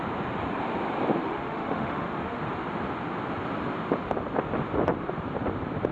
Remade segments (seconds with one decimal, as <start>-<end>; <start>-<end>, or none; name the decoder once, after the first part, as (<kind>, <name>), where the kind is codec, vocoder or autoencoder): 1.2-2.5 (autoencoder, DAC-VAE)